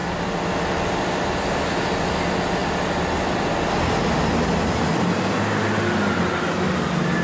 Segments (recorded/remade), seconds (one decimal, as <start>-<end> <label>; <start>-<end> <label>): 0.0-7.2 recorded